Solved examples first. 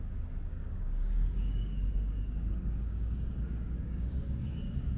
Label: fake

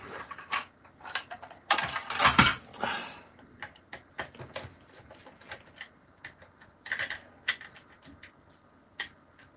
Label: real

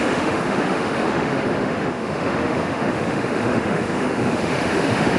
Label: fake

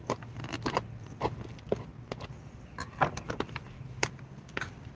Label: real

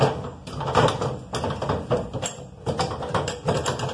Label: real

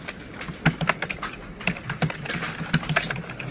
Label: fake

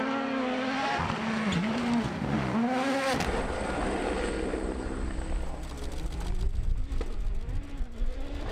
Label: real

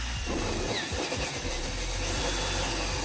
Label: real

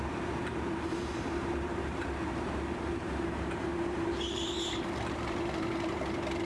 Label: fake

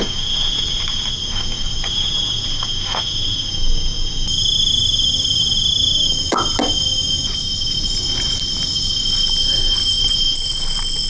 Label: real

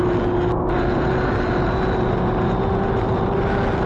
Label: real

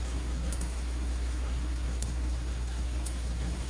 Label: fake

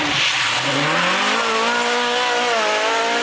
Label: real